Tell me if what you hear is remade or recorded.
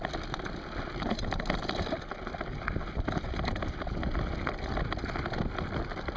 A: recorded